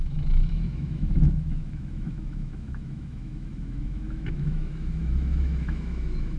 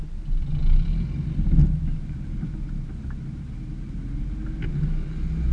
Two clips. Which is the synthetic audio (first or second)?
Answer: first